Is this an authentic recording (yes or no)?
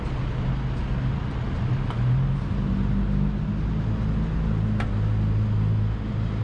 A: yes